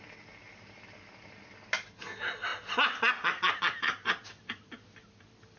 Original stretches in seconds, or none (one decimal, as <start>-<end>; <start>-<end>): 0.0-5.6